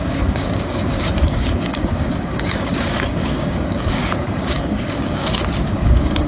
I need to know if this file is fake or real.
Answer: fake